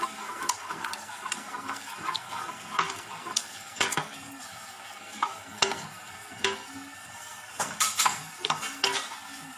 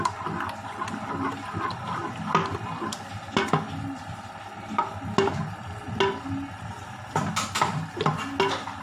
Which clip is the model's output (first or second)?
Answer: first